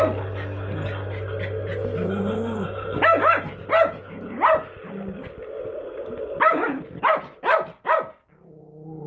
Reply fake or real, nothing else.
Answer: real